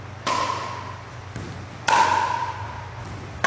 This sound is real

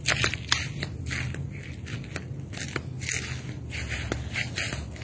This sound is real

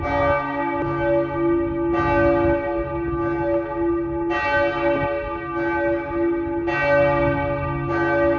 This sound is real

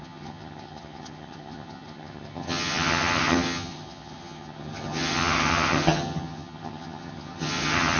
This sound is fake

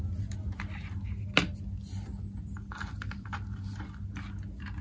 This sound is real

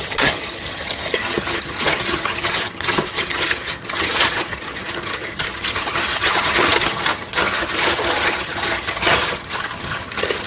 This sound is fake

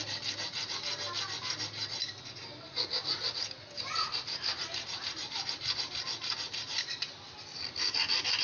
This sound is real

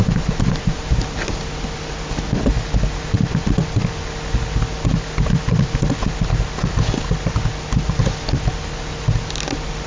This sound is real